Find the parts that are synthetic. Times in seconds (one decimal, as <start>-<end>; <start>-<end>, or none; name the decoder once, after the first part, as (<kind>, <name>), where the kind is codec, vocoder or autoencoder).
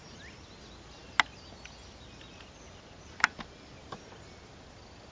none